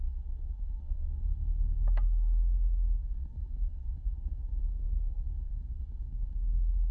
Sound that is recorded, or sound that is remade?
remade